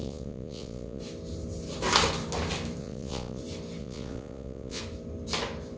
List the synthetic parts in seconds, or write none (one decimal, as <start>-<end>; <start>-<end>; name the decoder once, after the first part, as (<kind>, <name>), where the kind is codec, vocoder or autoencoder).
0.0-1.0 (vocoder, Vocos); 2.8-3.4; 3.8-4.8